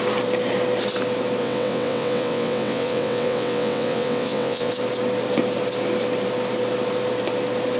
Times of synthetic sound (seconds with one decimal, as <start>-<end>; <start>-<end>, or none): 1.4-4.7